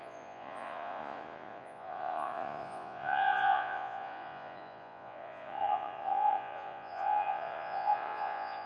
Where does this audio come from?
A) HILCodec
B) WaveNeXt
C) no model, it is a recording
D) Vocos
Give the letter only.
D